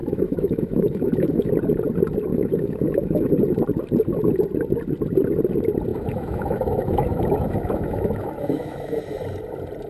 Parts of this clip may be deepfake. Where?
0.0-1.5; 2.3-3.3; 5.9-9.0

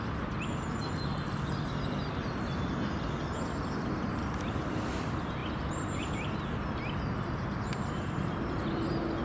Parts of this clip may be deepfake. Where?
none

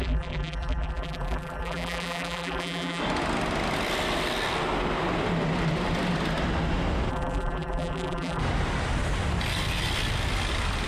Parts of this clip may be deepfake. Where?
0.0-3.0; 7.1-8.4

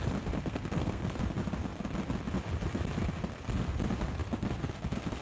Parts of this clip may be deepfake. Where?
0.4-1.2